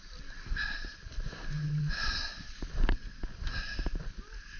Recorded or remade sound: recorded